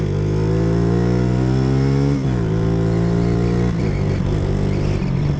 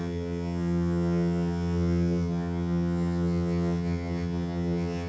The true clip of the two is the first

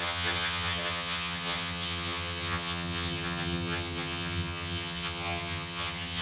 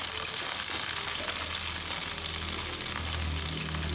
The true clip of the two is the second